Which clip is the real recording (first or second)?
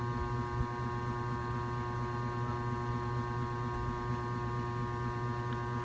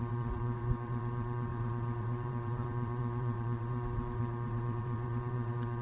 first